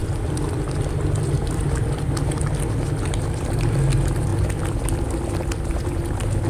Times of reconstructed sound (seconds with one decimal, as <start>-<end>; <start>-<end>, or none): none